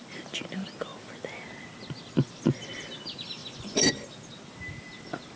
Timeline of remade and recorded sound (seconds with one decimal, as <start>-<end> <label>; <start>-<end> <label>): 0.0-3.4 recorded; 3.4-3.9 remade; 3.9-5.4 recorded